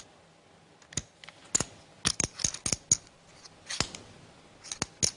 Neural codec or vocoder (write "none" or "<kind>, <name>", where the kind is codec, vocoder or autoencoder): none